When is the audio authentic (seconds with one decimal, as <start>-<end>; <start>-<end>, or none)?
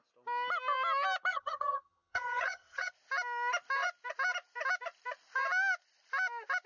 0.0-1.3; 2.9-6.7